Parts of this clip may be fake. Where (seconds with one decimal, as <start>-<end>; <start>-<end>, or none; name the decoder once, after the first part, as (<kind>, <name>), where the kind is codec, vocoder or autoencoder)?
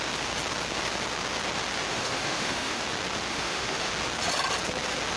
1.9-2.8 (autoencoder, DAC-VAE); 3.3-3.9